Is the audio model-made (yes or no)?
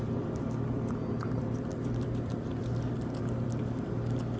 yes